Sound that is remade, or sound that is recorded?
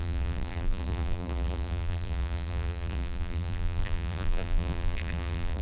remade